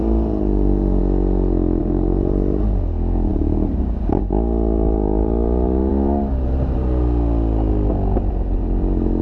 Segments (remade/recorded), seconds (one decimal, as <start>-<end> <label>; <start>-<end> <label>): 0.0-1.0 remade; 1.0-1.8 recorded; 1.8-2.8 remade; 2.8-3.3 recorded; 3.3-4.2 remade; 4.2-9.2 recorded